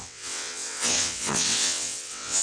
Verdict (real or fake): fake